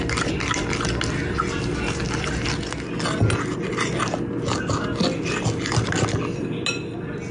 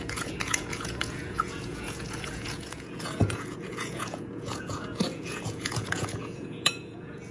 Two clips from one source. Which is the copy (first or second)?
second